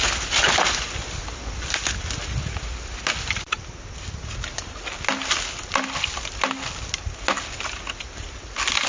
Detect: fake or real real